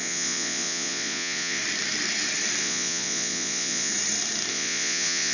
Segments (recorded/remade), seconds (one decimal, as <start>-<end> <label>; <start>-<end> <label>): 0.0-1.6 remade; 1.6-2.6 recorded; 2.6-3.9 remade; 3.9-4.5 recorded; 4.5-5.3 remade